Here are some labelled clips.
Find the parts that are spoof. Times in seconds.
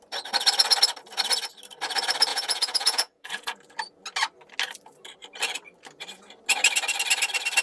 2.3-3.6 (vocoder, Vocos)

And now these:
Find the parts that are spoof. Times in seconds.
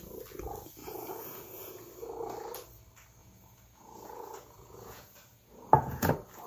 0.8-1.8 (vocoder, Vocos); 3.2-6.1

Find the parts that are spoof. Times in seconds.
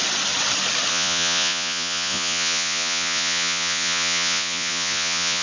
0.9-5.4 (vocoder, Vocos)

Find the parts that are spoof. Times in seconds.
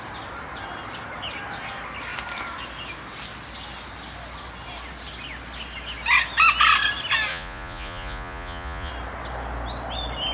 7.3-8.9 (vocoder, Vocos)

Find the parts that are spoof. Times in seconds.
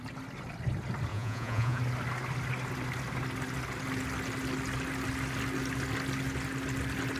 1.1-1.8 (vocoder, Vocos)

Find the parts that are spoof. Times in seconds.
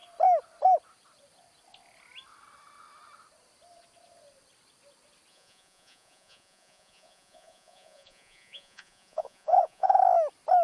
5.3-10.0 (vocoder, Vocos)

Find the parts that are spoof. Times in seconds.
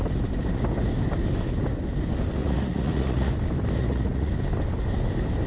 2.4-3.3 (vocoder, Vocos); 3.8-4.3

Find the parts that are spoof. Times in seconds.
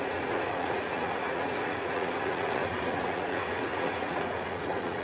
0.0-5.0 (vocoder, Vocos)